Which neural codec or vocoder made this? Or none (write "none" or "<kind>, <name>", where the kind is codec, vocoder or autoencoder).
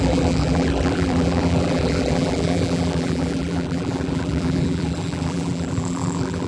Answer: vocoder, BigVGAN v2